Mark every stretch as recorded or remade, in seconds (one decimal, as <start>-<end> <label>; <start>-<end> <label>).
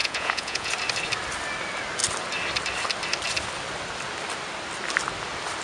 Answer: 0.0-0.7 remade; 0.7-5.6 recorded